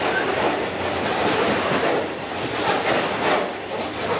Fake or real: real